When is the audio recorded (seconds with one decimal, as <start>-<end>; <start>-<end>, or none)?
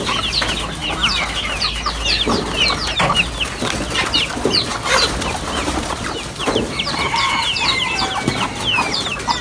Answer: 0.0-9.4